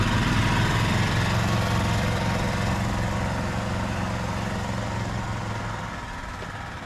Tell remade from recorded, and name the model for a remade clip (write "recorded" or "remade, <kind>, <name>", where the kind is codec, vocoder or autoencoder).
recorded